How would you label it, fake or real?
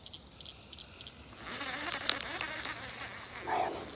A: real